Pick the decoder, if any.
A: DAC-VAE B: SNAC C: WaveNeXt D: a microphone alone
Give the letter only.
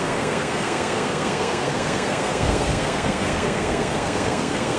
B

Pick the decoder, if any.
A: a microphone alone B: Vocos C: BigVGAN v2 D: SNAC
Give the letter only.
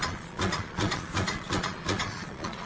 B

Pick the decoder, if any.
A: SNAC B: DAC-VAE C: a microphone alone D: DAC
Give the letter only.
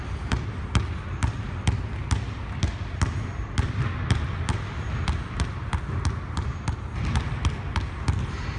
C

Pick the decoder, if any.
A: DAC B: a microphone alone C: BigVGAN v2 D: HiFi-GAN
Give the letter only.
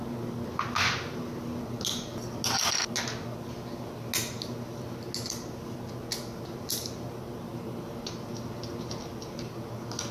B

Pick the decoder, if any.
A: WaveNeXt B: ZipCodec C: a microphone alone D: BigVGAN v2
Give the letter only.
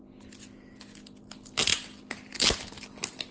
C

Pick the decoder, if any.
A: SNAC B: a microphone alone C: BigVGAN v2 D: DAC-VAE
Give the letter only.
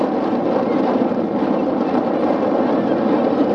B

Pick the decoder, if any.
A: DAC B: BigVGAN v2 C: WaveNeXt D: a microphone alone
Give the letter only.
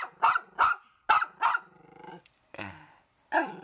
D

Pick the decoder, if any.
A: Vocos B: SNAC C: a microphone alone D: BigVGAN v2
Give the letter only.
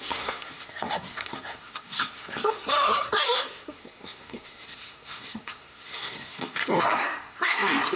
B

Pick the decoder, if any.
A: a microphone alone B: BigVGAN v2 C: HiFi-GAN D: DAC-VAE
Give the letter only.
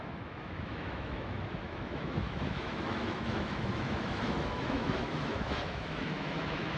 D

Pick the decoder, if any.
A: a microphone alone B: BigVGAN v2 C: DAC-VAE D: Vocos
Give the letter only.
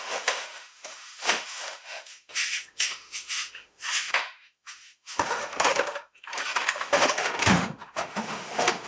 C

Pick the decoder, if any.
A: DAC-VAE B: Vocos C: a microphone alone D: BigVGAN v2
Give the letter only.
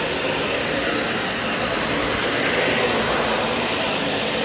C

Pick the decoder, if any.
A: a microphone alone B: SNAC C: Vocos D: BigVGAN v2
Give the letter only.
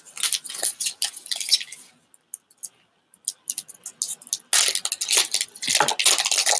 A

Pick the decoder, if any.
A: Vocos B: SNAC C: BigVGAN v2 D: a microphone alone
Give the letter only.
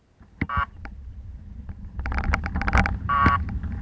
C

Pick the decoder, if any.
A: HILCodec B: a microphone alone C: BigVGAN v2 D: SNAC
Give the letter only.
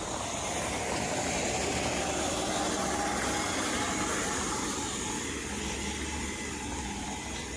B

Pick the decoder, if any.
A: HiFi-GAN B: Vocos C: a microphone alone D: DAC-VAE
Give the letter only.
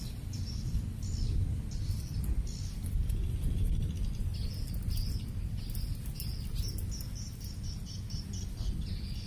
C